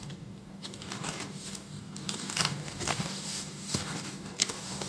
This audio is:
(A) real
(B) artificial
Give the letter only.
B